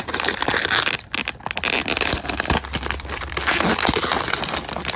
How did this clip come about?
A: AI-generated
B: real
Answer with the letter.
A